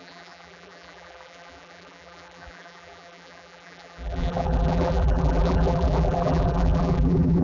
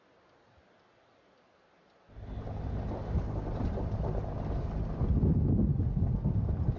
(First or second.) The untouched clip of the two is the second